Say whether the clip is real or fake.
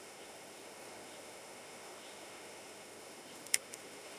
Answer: fake